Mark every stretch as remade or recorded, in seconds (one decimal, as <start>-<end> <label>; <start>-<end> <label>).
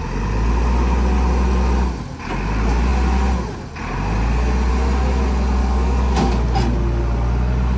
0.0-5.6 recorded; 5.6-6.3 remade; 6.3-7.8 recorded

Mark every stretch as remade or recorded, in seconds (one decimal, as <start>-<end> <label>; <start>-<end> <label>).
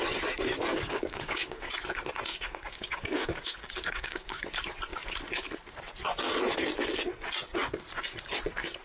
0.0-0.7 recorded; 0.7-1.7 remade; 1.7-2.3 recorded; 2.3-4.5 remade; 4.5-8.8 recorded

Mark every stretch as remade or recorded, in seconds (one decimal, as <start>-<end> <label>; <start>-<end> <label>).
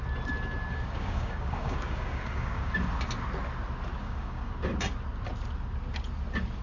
0.0-0.7 recorded; 0.7-2.7 remade; 2.7-4.0 recorded; 4.0-4.5 remade; 4.5-6.6 recorded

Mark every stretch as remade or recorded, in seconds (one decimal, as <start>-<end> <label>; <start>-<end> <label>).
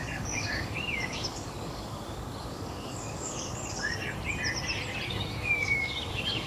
0.0-4.0 remade; 4.0-5.1 recorded; 5.1-6.5 remade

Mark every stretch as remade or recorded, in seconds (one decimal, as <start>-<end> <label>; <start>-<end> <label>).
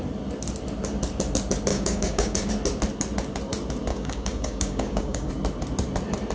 0.0-1.7 recorded; 1.7-2.5 remade; 2.5-3.9 recorded; 3.9-5.3 remade; 5.3-6.3 recorded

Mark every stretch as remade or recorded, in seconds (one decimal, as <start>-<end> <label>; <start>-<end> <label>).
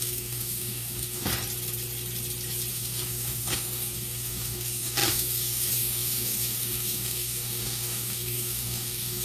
0.0-1.3 remade; 1.3-2.7 recorded; 2.7-9.2 remade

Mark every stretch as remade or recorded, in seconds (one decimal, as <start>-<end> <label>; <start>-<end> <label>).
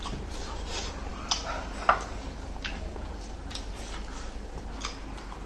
0.0-5.5 recorded